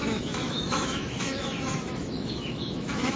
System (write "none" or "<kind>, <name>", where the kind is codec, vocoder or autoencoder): autoencoder, DAC-VAE